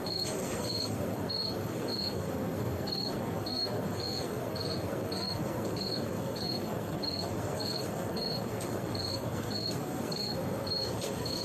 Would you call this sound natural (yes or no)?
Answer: no